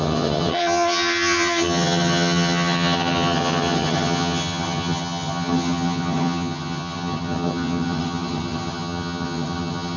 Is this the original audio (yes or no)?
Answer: no